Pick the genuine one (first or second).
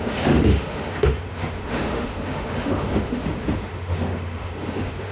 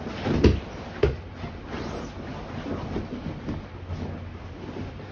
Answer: second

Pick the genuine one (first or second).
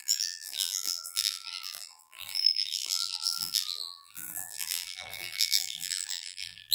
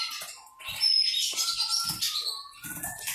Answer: second